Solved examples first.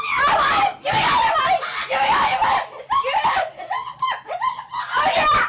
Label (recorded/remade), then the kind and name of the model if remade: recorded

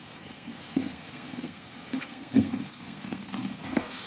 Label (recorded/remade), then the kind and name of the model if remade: remade, codec, SNAC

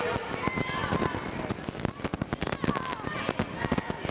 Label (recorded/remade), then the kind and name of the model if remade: recorded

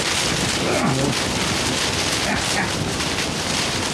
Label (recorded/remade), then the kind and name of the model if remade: remade, vocoder, BigVGAN v2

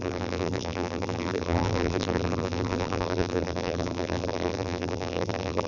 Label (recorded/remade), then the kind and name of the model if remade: remade, vocoder, BigVGAN v2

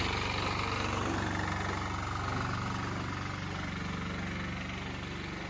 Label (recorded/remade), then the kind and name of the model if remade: recorded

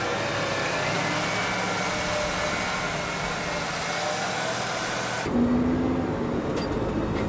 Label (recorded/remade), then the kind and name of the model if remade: recorded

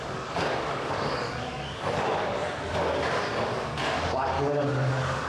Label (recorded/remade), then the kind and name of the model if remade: remade, codec, DAC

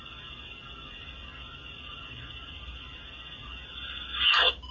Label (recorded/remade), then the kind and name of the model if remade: recorded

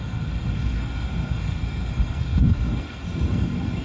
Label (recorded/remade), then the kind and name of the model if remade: remade, codec, SNAC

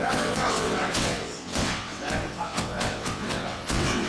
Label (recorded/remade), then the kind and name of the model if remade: remade, vocoder, WaveNeXt